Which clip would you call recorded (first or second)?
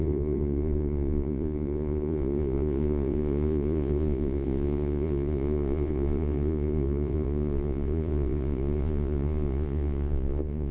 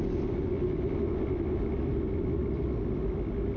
second